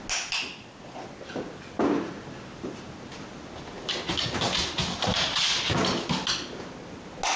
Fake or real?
real